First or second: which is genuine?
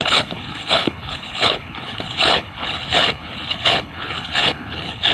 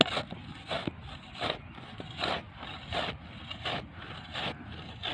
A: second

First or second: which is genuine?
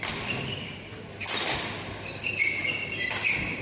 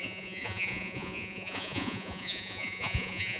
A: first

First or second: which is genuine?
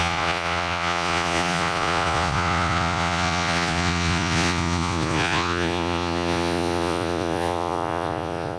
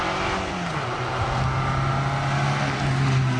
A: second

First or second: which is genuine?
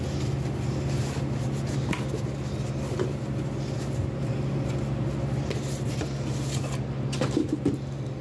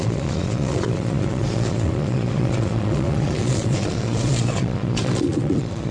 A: first